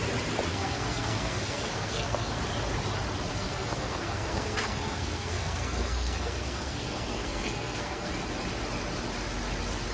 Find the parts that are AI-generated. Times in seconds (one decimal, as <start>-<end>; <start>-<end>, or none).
0.5-2.4; 3.3-8.1